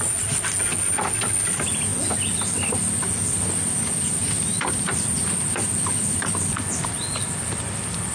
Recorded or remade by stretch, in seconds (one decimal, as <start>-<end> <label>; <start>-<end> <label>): 0.0-8.1 recorded